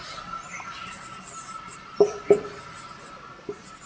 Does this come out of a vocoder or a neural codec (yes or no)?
no